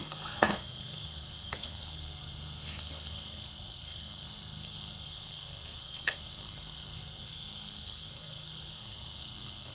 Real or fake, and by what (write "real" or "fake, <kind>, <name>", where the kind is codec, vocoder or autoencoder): fake, codec, SNAC